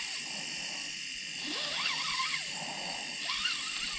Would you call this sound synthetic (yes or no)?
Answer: no